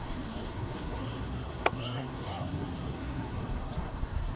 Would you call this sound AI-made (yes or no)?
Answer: yes